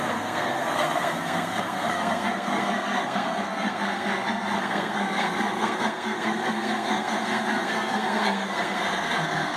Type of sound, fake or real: fake